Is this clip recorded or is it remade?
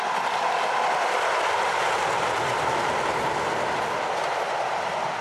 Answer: recorded